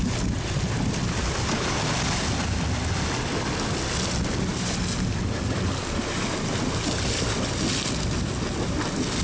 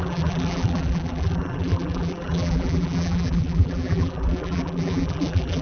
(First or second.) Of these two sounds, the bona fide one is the first